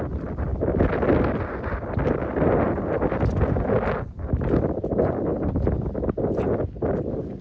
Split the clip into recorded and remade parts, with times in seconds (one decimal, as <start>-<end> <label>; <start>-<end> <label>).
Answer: 0.0-7.4 recorded